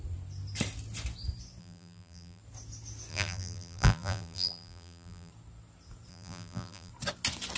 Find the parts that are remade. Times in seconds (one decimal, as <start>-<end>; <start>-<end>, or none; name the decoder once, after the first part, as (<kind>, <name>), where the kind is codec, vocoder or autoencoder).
1.6-2.4 (vocoder, BigVGAN v2); 3.1-5.3; 6.1-6.9